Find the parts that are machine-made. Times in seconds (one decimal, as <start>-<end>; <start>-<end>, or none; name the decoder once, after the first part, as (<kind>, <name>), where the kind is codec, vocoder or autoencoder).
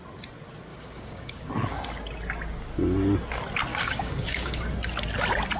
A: 0.7-1.5 (codec, DAC); 3.7-4.7